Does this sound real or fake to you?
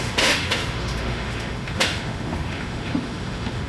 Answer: fake